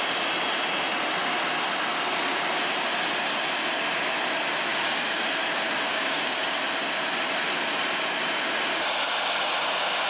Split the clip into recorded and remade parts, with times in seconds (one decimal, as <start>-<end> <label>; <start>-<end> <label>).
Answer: 0.0-4.7 recorded; 4.7-5.2 remade; 5.2-5.9 recorded; 5.9-6.6 remade; 6.6-10.1 recorded